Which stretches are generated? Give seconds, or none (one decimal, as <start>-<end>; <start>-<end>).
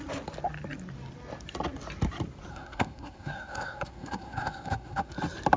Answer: 2.5-5.1